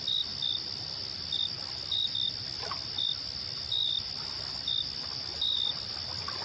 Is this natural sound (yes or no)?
yes